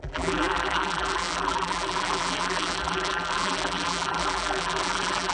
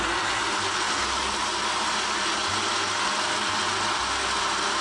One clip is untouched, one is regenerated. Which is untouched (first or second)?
second